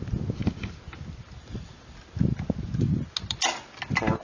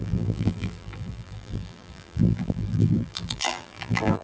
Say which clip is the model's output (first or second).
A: second